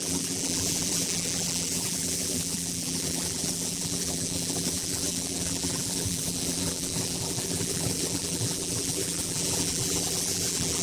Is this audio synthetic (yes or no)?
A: yes